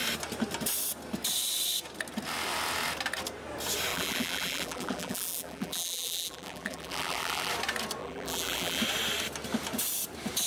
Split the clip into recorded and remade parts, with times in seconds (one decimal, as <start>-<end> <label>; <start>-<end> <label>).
0.0-3.9 recorded; 3.9-7.5 remade; 7.5-8.0 recorded; 8.0-8.8 remade; 8.8-10.5 recorded

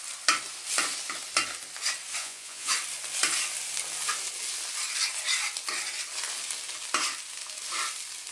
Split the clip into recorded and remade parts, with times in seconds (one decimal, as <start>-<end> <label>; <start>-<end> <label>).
0.0-2.2 recorded; 2.2-2.7 remade; 2.7-8.3 recorded

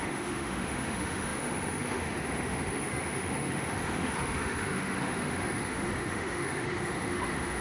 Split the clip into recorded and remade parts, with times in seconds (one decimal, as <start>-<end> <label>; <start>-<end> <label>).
0.0-7.6 remade

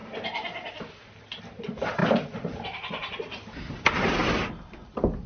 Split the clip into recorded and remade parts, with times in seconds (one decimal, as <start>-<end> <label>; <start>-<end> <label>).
0.0-1.4 recorded; 1.4-2.0 remade; 2.0-4.0 recorded; 4.0-4.8 remade; 4.8-5.3 recorded

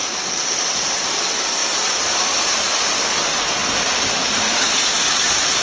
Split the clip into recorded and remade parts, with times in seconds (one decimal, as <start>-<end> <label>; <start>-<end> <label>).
0.0-3.6 recorded; 3.6-5.6 remade